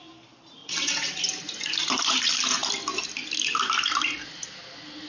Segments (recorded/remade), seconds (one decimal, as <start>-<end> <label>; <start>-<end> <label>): 0.0-0.6 recorded; 0.6-1.2 remade; 1.2-5.1 recorded